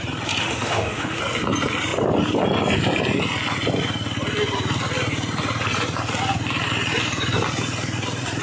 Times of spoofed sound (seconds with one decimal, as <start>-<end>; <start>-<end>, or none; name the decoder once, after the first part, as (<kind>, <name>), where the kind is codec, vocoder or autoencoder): 0.4-1.2 (autoencoder, DAC-VAE)